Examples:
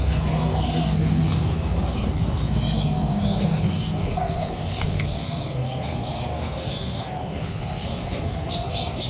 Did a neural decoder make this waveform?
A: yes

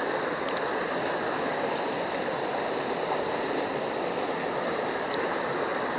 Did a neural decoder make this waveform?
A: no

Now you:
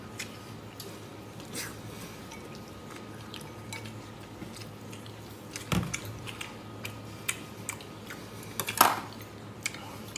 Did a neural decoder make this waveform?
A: no